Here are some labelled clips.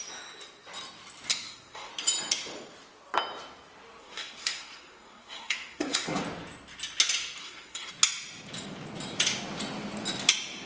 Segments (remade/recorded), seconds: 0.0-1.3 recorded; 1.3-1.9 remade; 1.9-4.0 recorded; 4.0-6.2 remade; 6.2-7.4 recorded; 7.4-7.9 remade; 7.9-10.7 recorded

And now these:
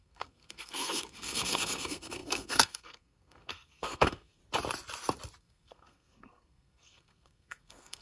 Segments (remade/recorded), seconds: 0.0-4.4 remade; 4.4-5.4 recorded; 5.4-8.0 remade

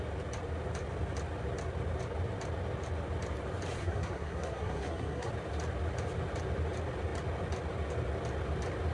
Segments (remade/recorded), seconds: 0.0-3.8 recorded; 3.8-5.3 remade; 5.3-8.9 recorded

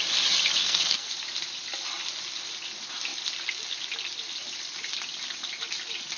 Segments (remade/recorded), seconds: 0.0-0.6 recorded; 0.6-1.1 remade; 1.1-6.2 recorded

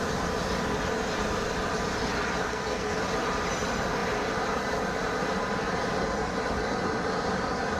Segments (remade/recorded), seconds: 0.0-2.4 recorded; 2.4-3.0 remade; 3.0-7.8 recorded

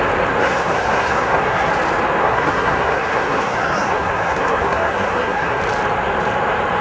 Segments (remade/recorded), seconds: 0.0-0.4 recorded; 0.4-1.7 remade; 1.7-2.2 recorded; 2.2-5.6 remade; 5.6-6.8 recorded

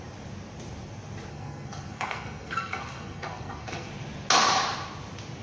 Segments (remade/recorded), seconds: 0.0-1.3 recorded; 1.3-3.9 remade; 3.9-5.4 recorded